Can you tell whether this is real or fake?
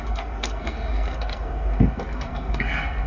fake